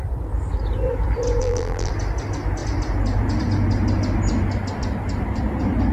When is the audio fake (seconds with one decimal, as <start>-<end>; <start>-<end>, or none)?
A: 1.4-1.9